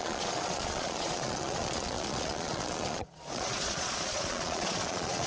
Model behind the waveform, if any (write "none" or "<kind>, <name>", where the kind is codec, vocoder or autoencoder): vocoder, Vocos